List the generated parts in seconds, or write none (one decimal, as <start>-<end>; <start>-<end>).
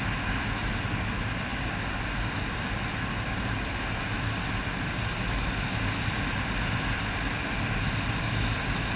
none